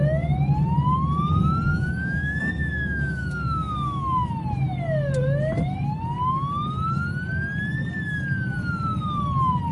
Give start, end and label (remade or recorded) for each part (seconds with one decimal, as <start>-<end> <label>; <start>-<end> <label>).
0.0-1.7 recorded; 1.7-4.3 remade; 4.3-9.7 recorded